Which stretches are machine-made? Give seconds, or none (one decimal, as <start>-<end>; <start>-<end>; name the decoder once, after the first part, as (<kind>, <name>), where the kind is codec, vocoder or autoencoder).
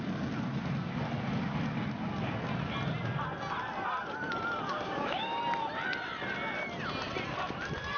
4.7-5.4 (codec, DAC)